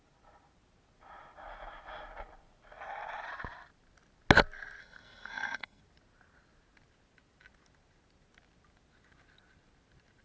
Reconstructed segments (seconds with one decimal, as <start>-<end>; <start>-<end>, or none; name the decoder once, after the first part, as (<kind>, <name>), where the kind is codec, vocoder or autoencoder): 4.8-5.8 (codec, SNAC)